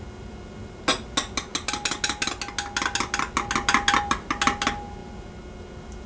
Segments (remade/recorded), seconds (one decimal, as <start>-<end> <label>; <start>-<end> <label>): 0.0-6.1 recorded